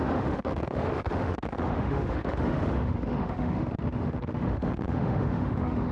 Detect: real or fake fake